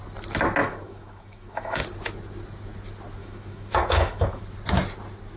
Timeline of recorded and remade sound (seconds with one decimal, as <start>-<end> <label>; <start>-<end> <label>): 0.0-0.6 recorded; 0.6-1.8 remade; 1.8-3.2 recorded; 3.2-4.4 remade; 4.4-5.4 recorded